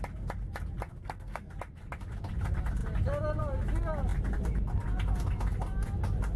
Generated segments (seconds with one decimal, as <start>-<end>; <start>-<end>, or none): 1.0-1.5